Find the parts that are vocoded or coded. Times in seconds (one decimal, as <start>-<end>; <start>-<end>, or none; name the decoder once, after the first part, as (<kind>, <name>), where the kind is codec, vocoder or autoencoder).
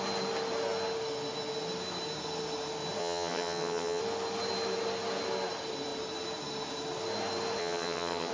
3.0-4.0 (vocoder, HiFi-GAN); 7.6-8.3